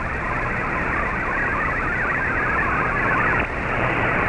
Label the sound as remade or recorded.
recorded